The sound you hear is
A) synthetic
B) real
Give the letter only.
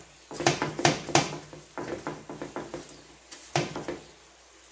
B